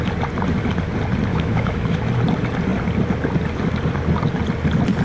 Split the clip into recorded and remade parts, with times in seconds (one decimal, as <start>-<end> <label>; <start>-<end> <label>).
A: 0.0-1.3 recorded; 1.3-2.0 remade; 2.0-5.0 recorded